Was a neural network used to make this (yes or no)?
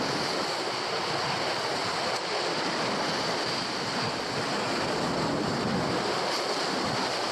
no